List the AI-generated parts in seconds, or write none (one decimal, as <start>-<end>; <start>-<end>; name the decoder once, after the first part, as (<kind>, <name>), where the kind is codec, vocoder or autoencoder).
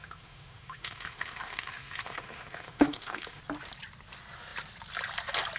0.0-3.4 (autoencoder, DAC-VAE)